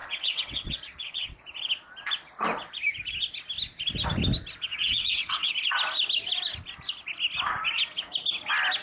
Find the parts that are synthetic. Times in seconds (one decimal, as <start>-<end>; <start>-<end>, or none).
0.0-1.4; 4.7-5.5